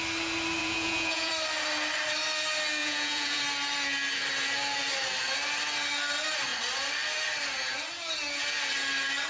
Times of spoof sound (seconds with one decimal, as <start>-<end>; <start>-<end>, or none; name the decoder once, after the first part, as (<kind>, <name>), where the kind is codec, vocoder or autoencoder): 0.6-1.3 (vocoder, Vocos); 2.8-3.4